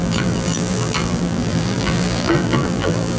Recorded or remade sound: remade